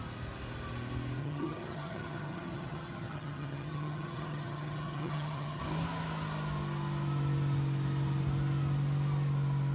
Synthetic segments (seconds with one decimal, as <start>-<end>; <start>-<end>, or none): 1.2-5.6